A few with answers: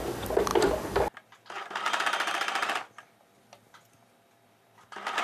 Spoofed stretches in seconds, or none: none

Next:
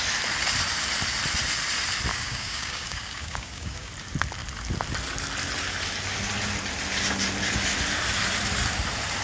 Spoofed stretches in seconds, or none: 2.1-3.9 (codec, DAC)